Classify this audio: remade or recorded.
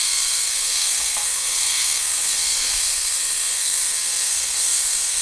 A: remade